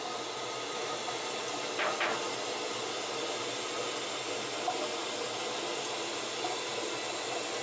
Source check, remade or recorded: recorded